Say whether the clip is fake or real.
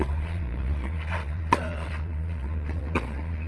fake